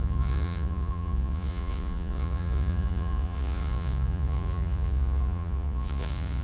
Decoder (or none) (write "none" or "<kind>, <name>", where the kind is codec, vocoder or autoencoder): vocoder, Vocos